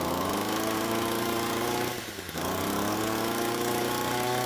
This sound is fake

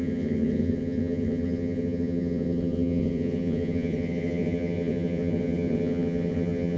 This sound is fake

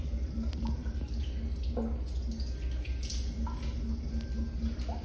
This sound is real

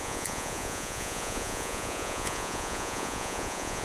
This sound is fake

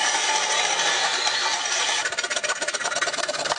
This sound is fake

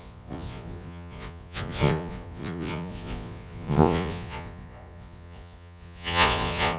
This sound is fake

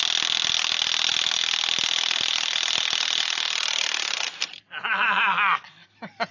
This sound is real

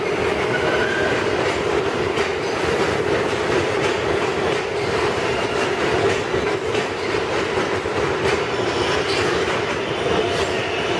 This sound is real